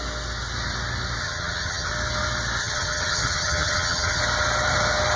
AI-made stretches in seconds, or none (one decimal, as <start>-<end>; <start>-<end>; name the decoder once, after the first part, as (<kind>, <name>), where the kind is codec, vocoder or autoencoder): 1.2-1.9 (vocoder, HiFi-GAN); 2.6-4.2